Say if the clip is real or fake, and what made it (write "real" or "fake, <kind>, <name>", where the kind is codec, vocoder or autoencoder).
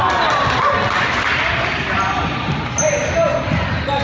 real